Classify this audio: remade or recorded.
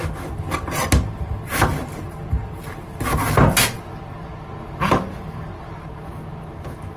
recorded